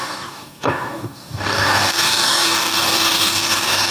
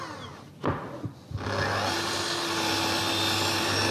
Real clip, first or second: second